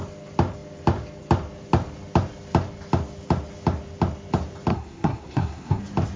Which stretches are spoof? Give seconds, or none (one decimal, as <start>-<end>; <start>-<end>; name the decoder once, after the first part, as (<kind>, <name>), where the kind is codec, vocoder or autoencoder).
4.7-5.8 (codec, SNAC)